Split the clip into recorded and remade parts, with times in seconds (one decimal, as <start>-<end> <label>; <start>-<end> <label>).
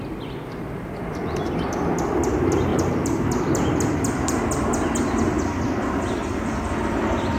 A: 0.0-2.7 recorded; 2.7-3.3 remade; 3.3-7.4 recorded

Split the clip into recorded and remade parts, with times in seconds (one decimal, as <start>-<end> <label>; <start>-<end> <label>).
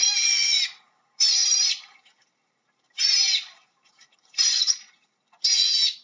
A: 0.0-1.4 recorded; 1.4-4.9 remade; 4.9-6.0 recorded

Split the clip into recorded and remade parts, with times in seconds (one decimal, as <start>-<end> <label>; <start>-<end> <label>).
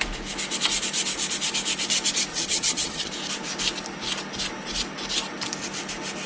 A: 0.0-2.3 recorded; 2.3-3.1 remade; 3.1-6.3 recorded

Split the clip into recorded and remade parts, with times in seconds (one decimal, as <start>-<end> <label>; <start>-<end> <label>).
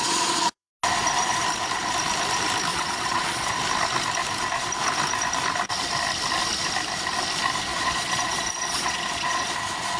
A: 0.0-0.7 remade; 0.7-2.7 recorded; 2.7-3.5 remade; 3.5-7.7 recorded; 7.7-9.5 remade; 9.5-10.0 recorded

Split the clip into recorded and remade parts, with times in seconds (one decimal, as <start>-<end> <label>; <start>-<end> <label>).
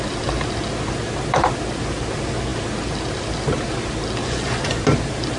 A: 0.0-4.2 recorded; 4.2-4.8 remade; 4.8-5.4 recorded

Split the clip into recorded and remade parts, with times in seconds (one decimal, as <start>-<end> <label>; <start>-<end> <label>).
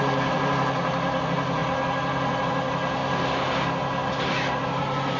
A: 0.0-1.6 remade; 1.6-2.4 recorded; 2.4-3.0 remade; 3.0-4.5 recorded; 4.5-5.2 remade